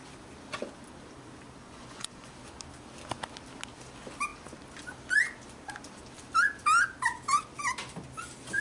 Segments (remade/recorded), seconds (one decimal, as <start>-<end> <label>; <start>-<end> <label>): 0.0-1.6 recorded; 1.6-2.3 remade; 2.3-8.6 recorded